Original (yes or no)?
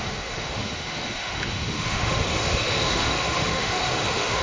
no